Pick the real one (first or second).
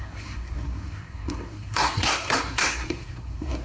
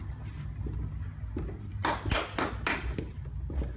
second